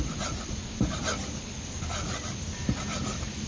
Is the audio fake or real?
real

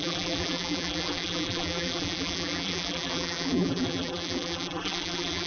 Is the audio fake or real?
fake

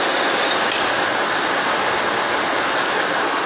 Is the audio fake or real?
real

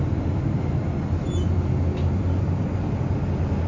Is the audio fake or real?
real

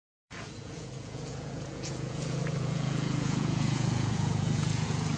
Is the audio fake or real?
fake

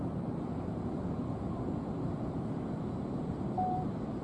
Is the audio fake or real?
fake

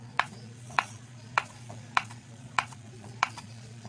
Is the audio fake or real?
fake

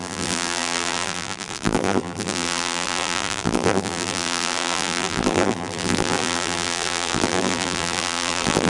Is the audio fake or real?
fake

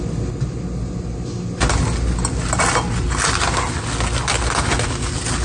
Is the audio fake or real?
real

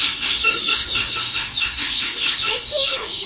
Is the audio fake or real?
fake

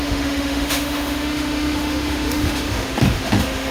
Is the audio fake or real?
fake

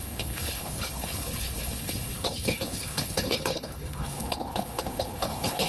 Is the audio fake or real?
fake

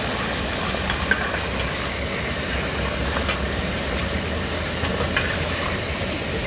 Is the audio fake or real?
real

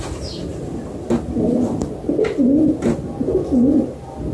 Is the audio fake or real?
real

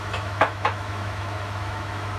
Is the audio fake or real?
fake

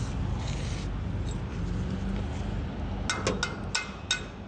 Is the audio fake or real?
real